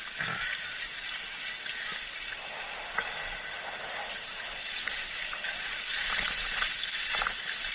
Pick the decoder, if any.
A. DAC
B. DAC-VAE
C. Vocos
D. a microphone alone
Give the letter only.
D